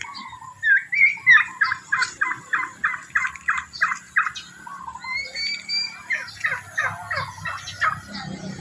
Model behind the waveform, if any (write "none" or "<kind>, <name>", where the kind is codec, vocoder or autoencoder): none